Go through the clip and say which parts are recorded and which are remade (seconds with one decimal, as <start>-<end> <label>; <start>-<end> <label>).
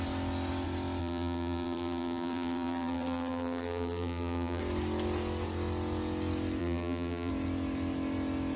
0.0-1.0 recorded; 1.0-4.6 remade; 4.6-6.6 recorded; 6.6-7.3 remade; 7.3-8.6 recorded